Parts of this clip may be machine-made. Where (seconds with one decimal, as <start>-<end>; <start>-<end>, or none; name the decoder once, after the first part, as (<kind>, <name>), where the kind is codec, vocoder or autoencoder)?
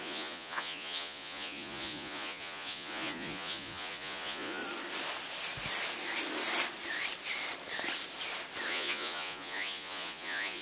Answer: 0.0-4.6 (vocoder, Vocos); 8.7-10.6